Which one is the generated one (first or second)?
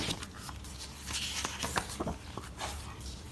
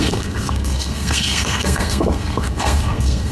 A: second